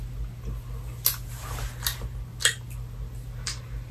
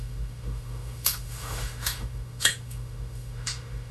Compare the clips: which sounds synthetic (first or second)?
second